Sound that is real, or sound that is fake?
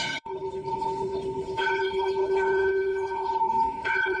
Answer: fake